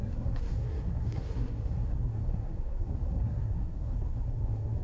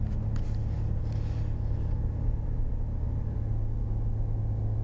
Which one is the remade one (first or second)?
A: first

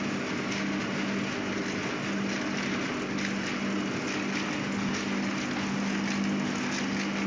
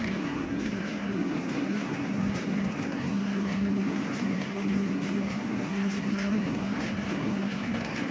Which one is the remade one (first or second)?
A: second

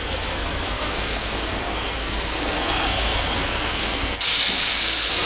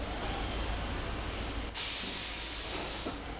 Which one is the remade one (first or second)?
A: first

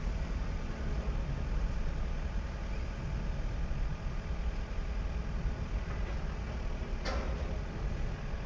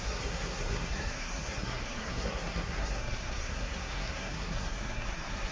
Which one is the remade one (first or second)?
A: second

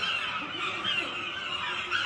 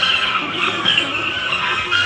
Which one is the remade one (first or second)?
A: second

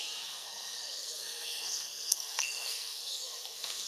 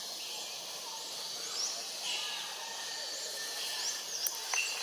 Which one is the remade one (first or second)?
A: first